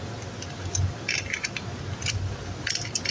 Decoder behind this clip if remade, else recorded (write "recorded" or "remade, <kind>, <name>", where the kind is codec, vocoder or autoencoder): recorded